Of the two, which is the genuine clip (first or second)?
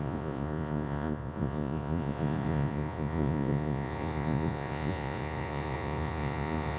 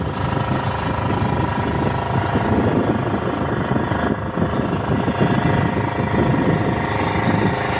second